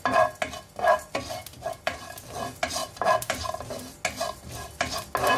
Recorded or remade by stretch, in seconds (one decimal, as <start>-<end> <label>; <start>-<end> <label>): 0.0-1.4 recorded; 1.4-2.0 remade; 2.0-2.8 recorded; 2.8-3.6 remade; 3.6-5.4 recorded